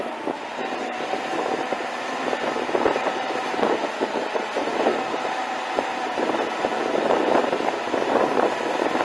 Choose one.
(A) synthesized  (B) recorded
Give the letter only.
A